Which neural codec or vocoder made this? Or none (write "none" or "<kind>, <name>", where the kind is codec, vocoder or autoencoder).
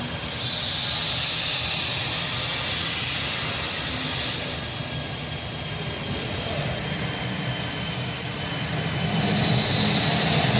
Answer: none